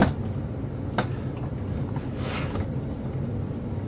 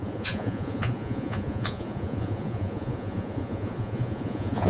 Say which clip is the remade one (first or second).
second